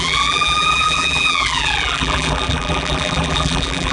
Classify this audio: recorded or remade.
remade